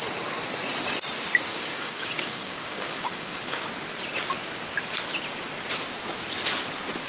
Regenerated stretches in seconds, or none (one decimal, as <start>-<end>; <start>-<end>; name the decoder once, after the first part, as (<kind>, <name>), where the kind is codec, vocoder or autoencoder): 1.5-3.6 (codec, DAC)